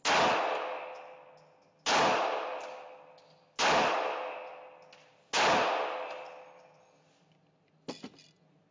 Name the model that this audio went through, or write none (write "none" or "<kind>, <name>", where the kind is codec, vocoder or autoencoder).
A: none